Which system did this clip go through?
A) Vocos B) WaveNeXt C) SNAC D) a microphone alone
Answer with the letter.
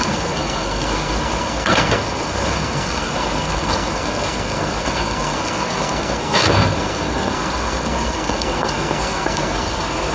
C